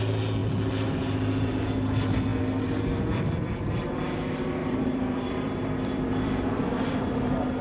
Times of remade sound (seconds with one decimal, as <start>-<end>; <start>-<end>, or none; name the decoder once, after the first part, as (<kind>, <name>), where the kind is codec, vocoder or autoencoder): 4.6-7.6 (vocoder, BigVGAN v2)